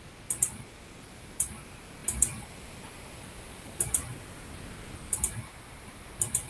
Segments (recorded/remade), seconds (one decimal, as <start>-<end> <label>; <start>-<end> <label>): 0.0-6.5 recorded